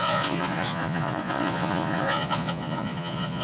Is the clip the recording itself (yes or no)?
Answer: no